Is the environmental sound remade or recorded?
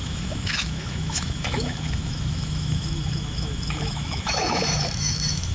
remade